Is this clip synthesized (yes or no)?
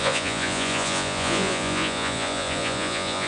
yes